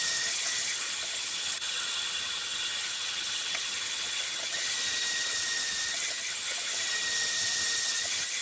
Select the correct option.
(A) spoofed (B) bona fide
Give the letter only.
A